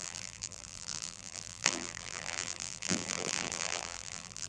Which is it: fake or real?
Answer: fake